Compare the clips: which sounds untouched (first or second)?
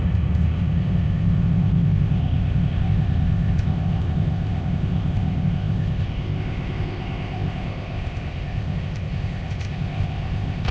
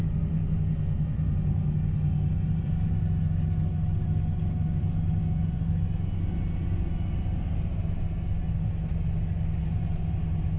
second